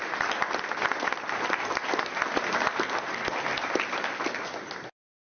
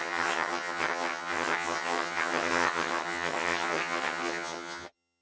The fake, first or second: second